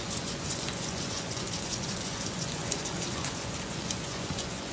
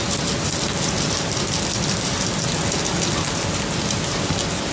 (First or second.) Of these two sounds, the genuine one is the second